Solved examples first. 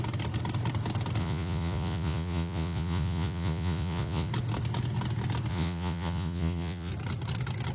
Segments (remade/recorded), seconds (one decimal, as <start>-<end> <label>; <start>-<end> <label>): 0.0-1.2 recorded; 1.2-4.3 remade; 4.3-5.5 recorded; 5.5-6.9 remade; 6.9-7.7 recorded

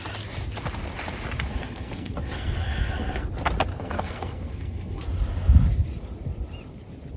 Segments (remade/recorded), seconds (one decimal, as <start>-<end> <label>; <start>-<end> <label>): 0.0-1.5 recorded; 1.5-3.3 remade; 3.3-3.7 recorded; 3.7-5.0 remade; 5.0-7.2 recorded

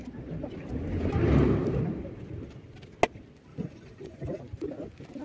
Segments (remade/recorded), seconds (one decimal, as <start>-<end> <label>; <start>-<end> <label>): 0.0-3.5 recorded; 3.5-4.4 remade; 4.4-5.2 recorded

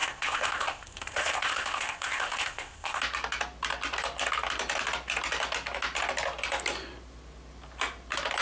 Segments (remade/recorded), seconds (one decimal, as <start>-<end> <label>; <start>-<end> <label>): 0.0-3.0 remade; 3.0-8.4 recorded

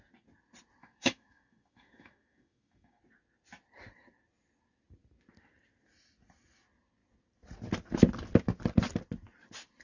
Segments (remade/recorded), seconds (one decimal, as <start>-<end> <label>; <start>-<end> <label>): 0.0-0.8 recorded; 0.8-3.0 remade; 3.0-9.8 recorded